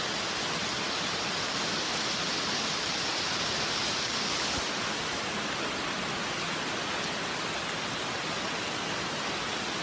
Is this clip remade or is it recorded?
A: recorded